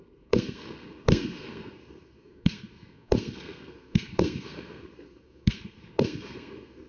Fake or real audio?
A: fake